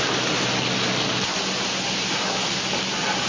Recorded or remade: recorded